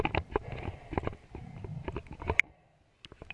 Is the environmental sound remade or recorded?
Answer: recorded